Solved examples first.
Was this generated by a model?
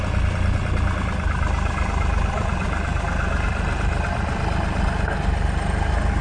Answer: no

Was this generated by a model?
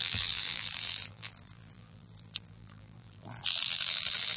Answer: yes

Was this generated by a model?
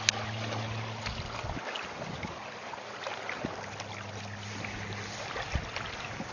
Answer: no